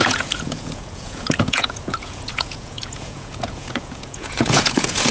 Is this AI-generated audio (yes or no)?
yes